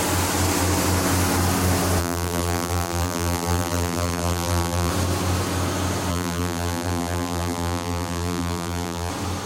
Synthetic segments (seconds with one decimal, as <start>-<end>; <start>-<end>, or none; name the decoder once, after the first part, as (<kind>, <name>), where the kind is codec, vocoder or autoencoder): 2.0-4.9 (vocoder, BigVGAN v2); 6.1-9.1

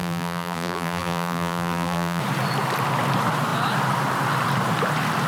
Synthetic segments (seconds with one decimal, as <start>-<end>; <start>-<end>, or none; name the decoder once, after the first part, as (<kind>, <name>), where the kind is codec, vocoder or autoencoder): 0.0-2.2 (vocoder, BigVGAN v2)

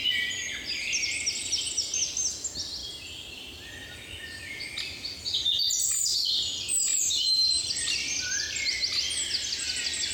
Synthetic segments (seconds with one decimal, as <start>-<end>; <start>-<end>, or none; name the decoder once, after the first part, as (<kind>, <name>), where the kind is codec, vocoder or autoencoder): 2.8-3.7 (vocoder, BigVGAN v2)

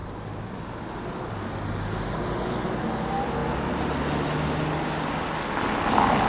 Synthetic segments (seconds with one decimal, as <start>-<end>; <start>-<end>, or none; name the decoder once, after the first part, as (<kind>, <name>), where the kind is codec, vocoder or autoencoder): none

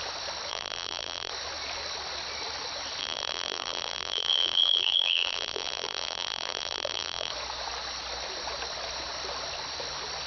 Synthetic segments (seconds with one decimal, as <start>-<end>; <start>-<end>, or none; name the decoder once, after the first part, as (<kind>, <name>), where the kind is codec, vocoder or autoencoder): 0.5-1.3 (vocoder, BigVGAN v2); 3.0-7.3